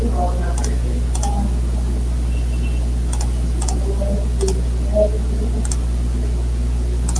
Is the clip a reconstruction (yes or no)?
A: no